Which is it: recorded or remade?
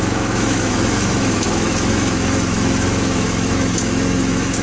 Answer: remade